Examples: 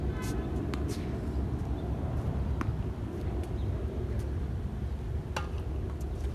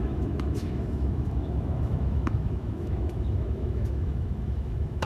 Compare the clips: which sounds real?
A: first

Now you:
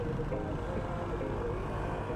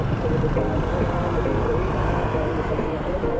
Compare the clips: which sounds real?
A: first